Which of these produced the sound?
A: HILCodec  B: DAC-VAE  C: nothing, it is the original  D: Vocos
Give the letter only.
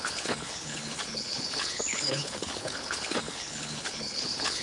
A